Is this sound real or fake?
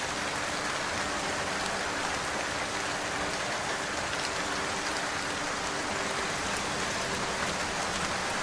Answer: real